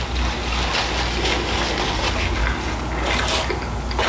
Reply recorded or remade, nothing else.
recorded